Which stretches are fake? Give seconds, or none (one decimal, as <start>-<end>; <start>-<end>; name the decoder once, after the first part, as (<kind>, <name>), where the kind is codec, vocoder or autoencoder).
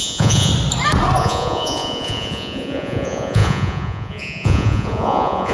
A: 0.0-0.5 (vocoder, Vocos); 1.2-5.5